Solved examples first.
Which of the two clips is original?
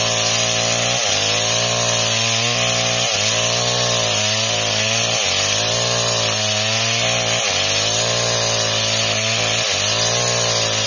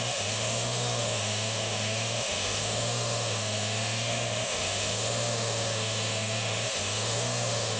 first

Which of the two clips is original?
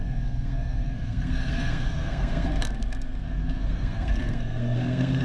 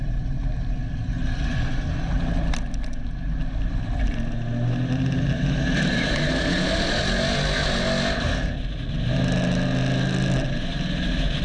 second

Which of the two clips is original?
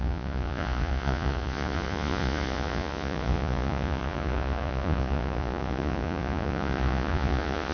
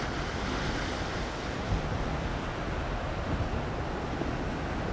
second